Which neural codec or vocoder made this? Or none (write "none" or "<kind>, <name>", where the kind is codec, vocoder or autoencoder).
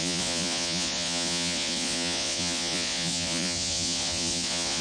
vocoder, Vocos